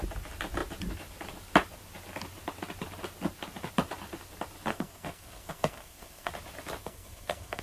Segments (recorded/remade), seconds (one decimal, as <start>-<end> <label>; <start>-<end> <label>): 0.0-4.7 recorded; 4.7-6.3 remade; 6.3-6.8 recorded; 6.8-7.6 remade